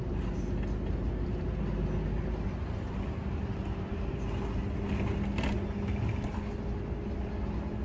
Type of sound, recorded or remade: recorded